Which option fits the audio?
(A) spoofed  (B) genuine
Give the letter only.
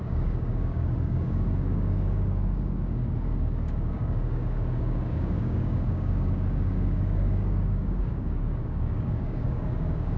A